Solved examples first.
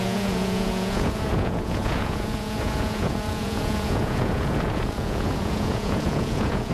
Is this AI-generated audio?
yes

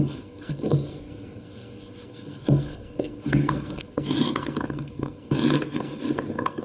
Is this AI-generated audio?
yes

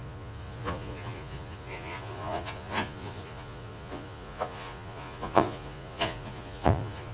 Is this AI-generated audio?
yes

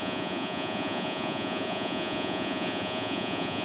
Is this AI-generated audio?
yes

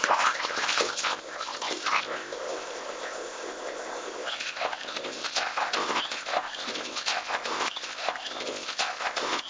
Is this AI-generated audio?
yes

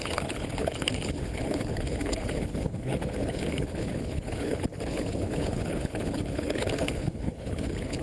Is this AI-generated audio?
yes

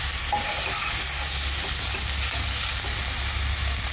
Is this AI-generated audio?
no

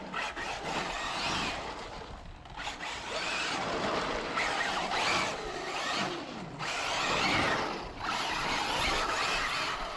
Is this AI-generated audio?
no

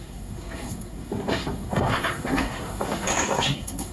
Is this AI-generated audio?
yes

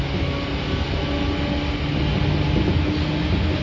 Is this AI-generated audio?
no